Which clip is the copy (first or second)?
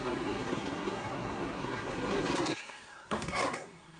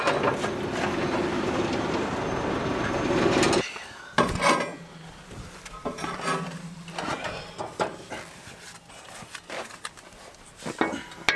first